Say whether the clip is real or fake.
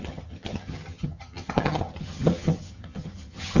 fake